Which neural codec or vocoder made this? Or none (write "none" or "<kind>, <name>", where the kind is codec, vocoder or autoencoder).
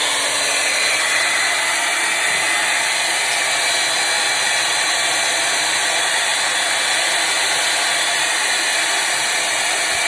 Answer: none